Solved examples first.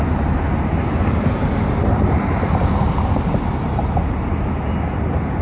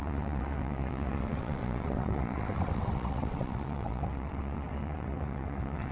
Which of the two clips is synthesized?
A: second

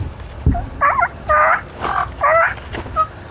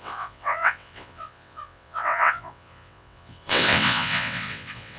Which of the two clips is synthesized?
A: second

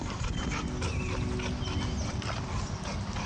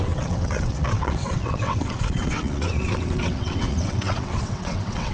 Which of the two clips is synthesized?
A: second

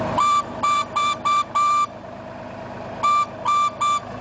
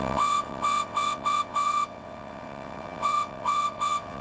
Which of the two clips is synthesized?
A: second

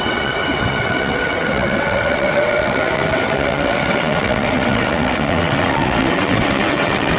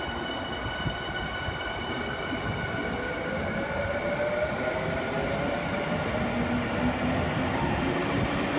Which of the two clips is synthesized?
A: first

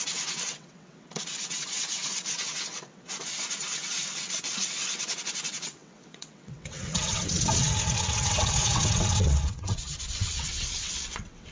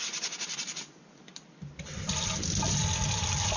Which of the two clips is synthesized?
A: first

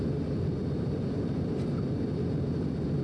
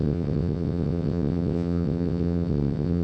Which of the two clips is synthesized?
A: second